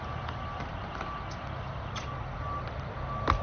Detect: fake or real real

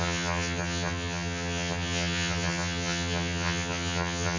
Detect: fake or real fake